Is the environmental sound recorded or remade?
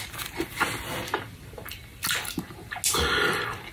recorded